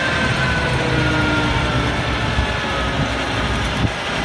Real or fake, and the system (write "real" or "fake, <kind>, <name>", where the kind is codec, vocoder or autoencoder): real